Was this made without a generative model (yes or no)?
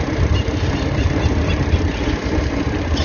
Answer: yes